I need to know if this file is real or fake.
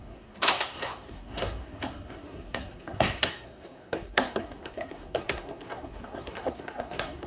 fake